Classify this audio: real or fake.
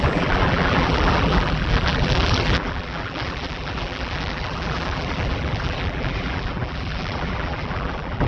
fake